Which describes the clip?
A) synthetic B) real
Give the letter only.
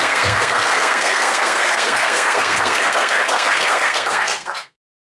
A